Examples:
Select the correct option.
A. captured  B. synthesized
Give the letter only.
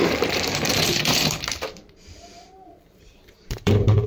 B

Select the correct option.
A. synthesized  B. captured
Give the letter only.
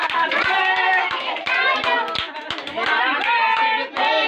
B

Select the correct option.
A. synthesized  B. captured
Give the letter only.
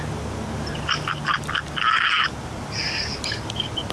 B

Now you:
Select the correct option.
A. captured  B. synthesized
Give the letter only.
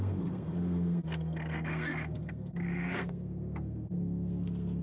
B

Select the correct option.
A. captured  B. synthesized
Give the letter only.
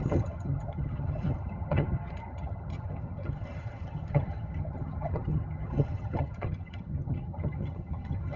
B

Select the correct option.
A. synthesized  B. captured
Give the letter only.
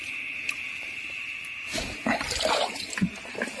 A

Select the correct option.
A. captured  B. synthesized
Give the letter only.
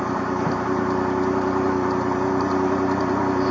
B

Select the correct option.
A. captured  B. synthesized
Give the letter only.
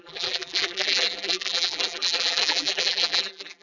B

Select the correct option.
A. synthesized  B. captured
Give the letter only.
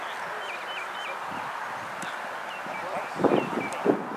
B